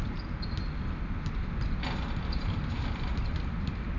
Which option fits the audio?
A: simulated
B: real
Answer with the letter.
B